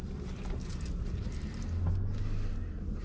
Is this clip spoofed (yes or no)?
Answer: no